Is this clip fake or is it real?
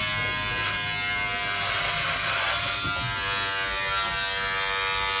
real